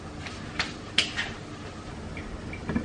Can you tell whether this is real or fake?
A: real